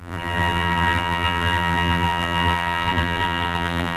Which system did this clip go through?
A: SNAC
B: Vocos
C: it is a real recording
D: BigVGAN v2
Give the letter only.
D